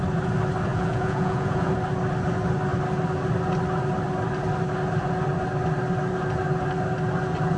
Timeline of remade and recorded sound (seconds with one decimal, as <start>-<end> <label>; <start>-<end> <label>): 0.0-0.7 recorded; 0.7-1.7 remade; 1.7-7.6 recorded